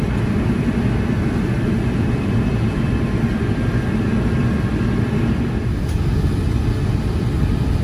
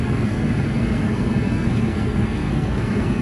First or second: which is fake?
second